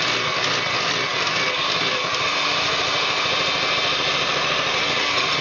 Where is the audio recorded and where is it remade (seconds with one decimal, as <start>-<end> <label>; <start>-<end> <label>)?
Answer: 0.0-5.4 recorded